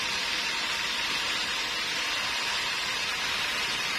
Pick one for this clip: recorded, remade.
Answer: recorded